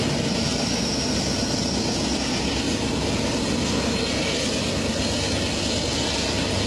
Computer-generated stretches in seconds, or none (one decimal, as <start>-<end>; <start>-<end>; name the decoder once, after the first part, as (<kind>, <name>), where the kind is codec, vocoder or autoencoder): none